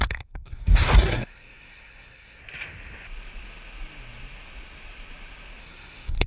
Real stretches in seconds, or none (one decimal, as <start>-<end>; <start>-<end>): 2.4-5.6